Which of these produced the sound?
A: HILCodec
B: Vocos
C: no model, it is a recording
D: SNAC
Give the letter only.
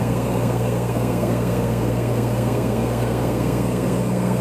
D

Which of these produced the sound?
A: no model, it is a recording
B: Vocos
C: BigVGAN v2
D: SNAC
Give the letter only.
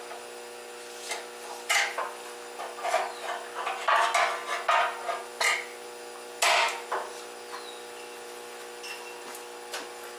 A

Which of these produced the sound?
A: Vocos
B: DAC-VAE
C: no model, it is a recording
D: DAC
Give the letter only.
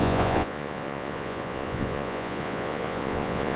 A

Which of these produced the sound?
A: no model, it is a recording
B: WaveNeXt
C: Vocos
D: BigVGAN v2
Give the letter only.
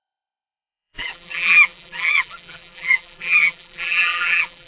D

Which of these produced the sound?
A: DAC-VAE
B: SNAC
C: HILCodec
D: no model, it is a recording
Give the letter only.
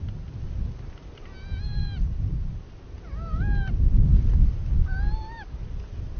D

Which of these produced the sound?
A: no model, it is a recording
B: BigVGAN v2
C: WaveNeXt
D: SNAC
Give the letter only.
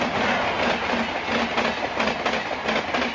A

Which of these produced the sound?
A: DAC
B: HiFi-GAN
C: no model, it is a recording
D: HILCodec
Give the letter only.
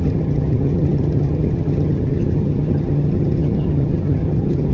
B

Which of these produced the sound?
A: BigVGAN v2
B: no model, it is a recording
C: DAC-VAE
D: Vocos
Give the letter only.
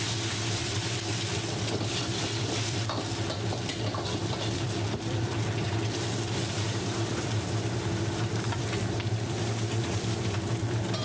A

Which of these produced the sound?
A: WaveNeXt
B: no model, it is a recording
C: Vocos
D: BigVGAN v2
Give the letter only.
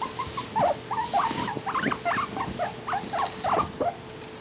B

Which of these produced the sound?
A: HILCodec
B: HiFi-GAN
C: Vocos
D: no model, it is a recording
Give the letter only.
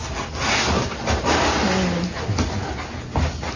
D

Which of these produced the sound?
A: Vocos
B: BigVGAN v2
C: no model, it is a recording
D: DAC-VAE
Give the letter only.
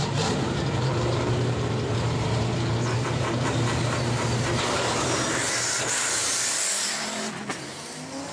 B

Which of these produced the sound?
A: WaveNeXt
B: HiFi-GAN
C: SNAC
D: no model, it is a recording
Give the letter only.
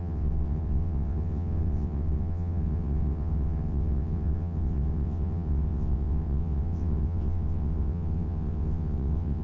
A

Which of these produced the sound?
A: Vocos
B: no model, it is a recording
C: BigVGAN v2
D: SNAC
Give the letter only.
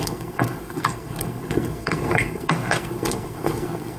D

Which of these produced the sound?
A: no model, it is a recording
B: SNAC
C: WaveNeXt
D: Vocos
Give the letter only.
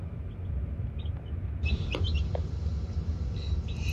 A